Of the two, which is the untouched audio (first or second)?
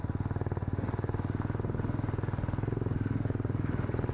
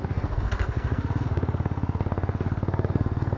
first